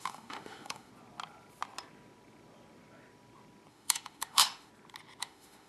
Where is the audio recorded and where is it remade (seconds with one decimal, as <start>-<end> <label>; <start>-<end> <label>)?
0.0-0.9 remade; 0.9-3.7 recorded; 3.7-4.7 remade; 4.7-5.2 recorded; 5.2-5.7 remade

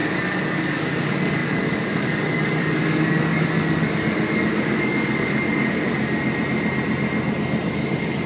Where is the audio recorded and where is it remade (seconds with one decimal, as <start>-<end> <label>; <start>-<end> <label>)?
0.0-6.0 remade; 6.0-7.7 recorded; 7.7-8.3 remade

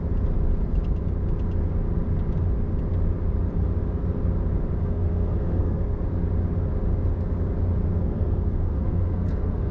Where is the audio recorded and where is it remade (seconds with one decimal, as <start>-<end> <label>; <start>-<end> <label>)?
0.0-4.8 recorded; 4.8-6.0 remade; 6.0-7.9 recorded; 7.9-9.7 remade

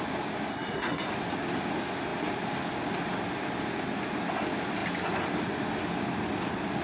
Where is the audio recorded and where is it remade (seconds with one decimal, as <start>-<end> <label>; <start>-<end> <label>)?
0.0-0.5 recorded; 0.5-1.1 remade; 1.1-6.8 recorded

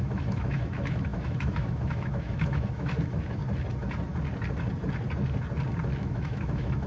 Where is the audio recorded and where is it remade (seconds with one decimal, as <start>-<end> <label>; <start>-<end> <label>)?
0.0-3.4 remade; 3.4-6.0 recorded; 6.0-6.9 remade

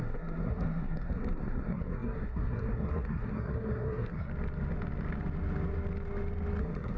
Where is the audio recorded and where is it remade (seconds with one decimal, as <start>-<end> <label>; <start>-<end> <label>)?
0.0-4.3 remade; 4.3-6.6 recorded; 6.6-7.0 remade

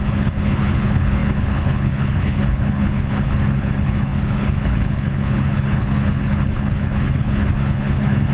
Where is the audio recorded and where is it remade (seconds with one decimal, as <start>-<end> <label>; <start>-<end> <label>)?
0.0-8.3 remade